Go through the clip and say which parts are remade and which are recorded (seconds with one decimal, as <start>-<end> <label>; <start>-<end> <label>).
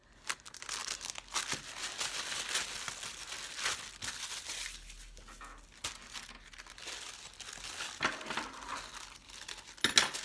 0.0-10.2 recorded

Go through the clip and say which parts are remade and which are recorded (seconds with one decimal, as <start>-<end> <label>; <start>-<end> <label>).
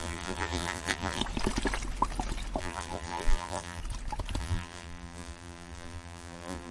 0.0-1.2 remade; 1.2-2.6 recorded; 2.6-3.8 remade; 3.8-4.4 recorded; 4.4-6.7 remade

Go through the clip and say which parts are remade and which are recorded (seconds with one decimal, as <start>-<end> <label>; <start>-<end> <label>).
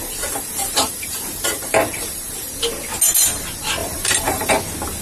0.0-2.5 remade; 2.5-3.8 recorded; 3.8-4.5 remade; 4.5-5.0 recorded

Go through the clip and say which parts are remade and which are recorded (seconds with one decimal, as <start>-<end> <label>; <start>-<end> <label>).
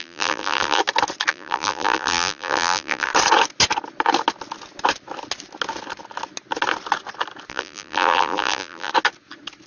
0.0-0.8 remade; 0.8-1.3 recorded; 1.3-3.1 remade; 3.1-7.5 recorded; 7.5-8.9 remade; 8.9-9.7 recorded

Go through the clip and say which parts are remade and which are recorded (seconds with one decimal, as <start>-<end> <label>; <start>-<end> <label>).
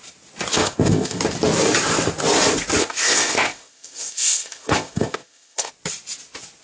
0.0-0.5 recorded; 0.5-1.2 remade; 1.2-2.8 recorded; 2.8-5.7 remade; 5.7-6.6 recorded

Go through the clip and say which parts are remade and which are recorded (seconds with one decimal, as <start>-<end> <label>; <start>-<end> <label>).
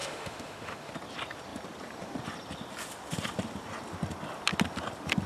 0.0-0.9 remade; 0.9-5.3 recorded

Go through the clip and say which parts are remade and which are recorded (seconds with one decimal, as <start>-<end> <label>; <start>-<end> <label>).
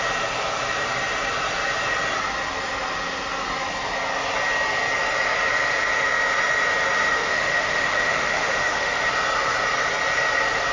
0.0-7.1 recorded; 7.1-9.0 remade; 9.0-10.7 recorded